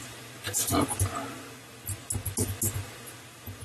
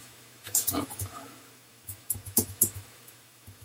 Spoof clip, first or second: second